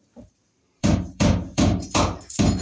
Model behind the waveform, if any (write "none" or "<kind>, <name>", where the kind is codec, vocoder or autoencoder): vocoder, BigVGAN v2